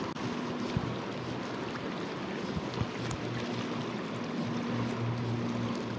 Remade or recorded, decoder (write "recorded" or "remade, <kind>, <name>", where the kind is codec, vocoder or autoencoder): recorded